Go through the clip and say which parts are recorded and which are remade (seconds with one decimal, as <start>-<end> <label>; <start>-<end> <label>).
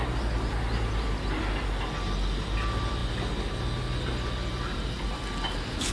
0.0-5.9 recorded